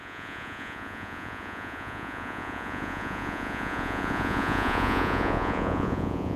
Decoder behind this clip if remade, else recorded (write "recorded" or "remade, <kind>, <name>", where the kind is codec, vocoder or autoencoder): remade, vocoder, Vocos